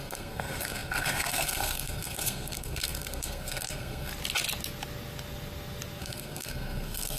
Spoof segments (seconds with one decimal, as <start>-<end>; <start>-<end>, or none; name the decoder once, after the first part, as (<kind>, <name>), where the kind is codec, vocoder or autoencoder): 0.0-4.1 (codec, SNAC); 6.0-7.2